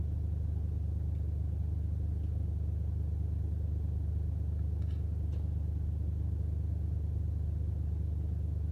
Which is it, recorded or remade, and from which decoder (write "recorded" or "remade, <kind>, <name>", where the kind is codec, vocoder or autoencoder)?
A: recorded